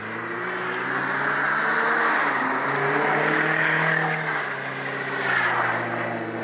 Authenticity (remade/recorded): recorded